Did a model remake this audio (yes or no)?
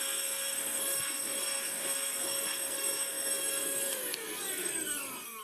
yes